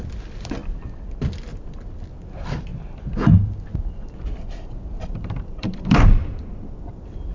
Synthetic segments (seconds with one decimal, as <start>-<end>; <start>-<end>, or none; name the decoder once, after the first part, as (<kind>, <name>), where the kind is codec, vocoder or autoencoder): 0.0-2.7 (vocoder, BigVGAN v2); 5.0-7.3